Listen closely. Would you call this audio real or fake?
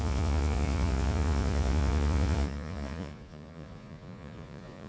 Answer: fake